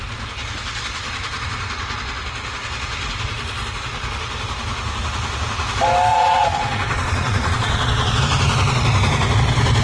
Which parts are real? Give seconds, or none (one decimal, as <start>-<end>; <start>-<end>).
0.0-6.1; 8.2-9.8